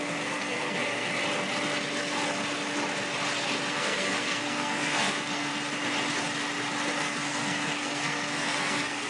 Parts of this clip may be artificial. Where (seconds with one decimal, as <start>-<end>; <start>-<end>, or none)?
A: 0.0-1.1; 3.7-5.5; 7.0-9.1